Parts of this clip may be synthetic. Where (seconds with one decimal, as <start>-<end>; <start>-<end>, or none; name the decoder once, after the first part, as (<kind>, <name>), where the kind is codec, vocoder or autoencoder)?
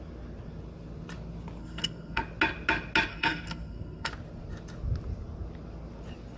1.6-2.2 (codec, SNAC); 3.1-4.1